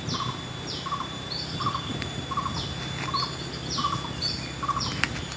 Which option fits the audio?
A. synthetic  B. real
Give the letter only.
B